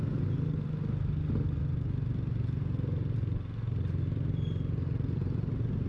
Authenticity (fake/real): real